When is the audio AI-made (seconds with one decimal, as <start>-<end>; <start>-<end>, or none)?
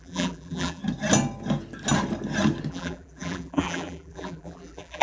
0.0-0.8; 2.7-5.0